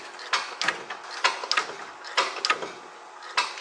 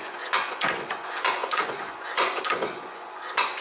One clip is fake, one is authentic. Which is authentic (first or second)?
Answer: first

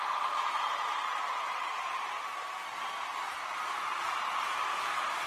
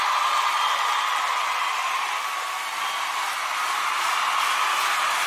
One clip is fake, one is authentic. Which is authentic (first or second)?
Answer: second